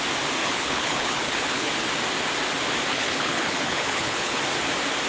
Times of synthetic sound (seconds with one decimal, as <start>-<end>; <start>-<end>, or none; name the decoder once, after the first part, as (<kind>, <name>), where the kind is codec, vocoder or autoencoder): 0.4-1.7 (codec, HILCodec); 2.9-4.4